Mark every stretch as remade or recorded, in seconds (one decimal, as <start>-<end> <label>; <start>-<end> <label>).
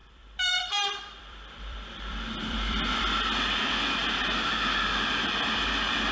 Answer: 0.0-3.0 remade; 3.0-6.1 recorded